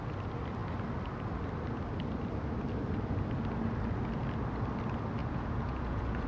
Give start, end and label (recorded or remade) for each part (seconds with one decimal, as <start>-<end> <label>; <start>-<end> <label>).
0.0-5.2 recorded; 5.2-6.3 remade